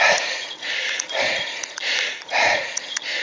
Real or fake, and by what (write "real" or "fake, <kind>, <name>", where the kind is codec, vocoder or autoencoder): fake, vocoder, Vocos